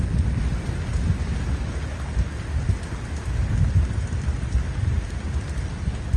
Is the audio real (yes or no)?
yes